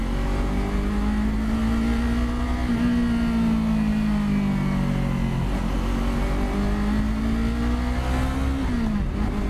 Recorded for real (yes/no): yes